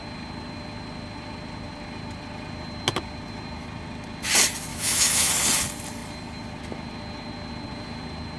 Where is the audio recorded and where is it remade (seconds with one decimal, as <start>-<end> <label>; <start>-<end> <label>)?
0.0-4.7 recorded; 4.7-5.3 remade; 5.3-8.4 recorded